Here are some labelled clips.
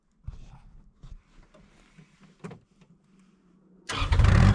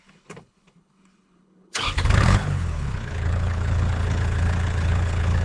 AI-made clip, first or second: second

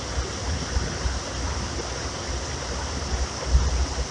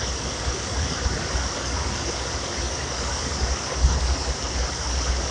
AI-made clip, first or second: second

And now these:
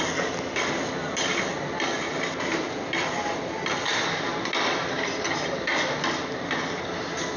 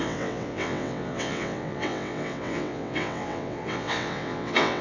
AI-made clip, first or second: second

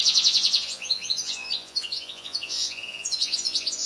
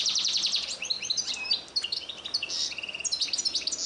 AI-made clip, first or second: first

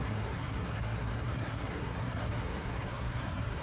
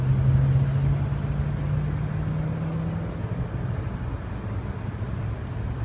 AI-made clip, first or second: first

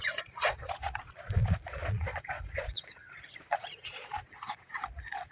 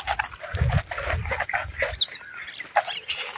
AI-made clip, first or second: first